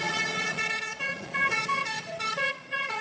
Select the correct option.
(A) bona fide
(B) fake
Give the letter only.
B